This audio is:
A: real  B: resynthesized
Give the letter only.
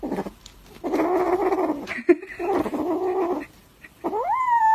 A